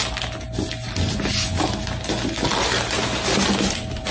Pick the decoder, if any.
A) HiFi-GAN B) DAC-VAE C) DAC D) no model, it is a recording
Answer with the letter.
D